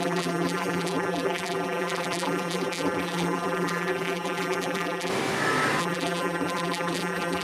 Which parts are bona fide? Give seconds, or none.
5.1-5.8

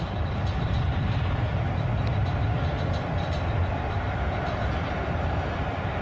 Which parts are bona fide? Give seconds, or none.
1.9-3.7

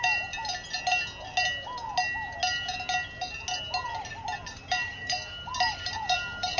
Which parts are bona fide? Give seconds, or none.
0.4-4.4

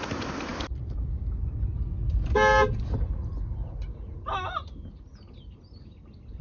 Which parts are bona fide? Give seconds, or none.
1.7-5.5

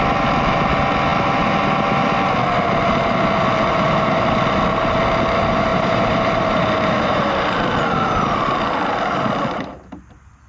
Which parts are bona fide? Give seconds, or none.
0.0-5.7; 7.3-10.5

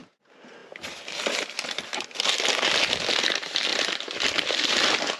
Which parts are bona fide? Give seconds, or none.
0.0-3.7; 4.8-5.2

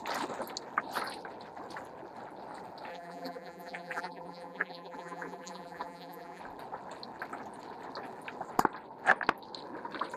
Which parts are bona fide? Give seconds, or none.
0.0-2.9; 6.4-10.2

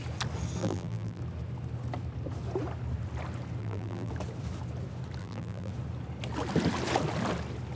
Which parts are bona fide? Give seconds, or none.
0.0-0.6; 1.2-3.6; 4.1-5.2; 5.7-7.8